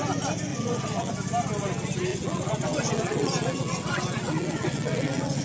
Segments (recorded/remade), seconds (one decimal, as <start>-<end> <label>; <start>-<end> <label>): 0.0-0.5 recorded; 0.5-1.1 remade; 1.1-2.1 recorded; 2.1-5.4 remade